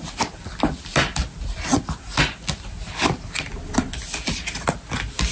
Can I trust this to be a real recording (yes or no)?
yes